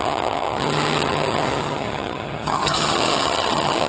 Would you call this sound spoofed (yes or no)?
yes